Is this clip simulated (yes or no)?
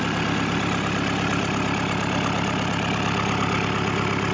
no